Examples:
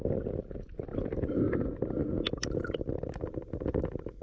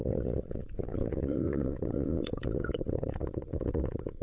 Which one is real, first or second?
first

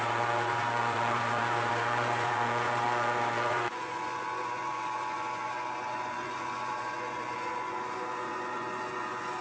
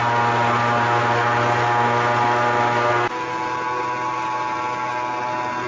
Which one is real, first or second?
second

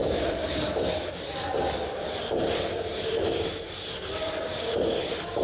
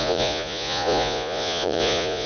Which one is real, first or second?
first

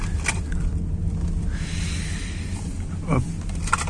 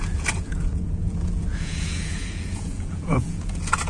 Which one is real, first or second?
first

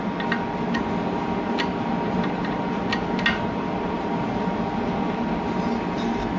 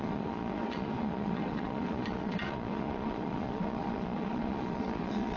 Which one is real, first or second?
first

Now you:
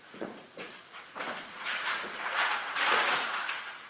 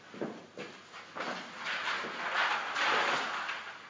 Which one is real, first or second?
second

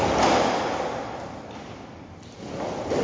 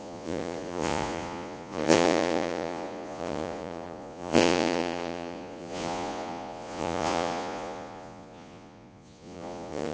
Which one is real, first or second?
first